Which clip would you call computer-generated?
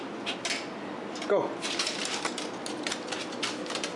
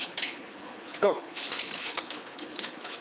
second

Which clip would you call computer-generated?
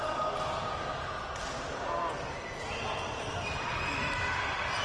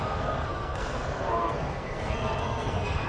second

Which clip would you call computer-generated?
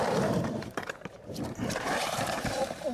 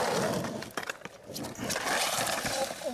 first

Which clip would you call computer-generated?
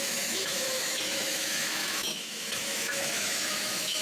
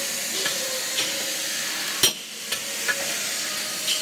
first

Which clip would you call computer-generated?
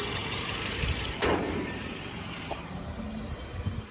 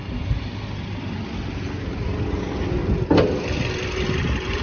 first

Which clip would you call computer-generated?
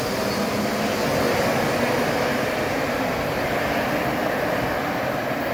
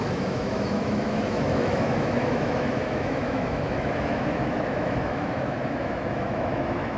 second